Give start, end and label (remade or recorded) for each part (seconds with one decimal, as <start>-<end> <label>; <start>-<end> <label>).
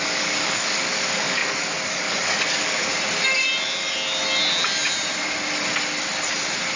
0.0-2.9 remade; 2.9-6.8 recorded